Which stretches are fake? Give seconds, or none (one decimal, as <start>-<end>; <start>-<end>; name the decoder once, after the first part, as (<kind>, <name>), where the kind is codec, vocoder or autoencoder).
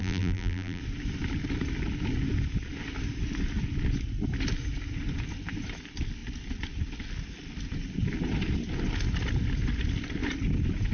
0.0-0.8 (vocoder, BigVGAN v2)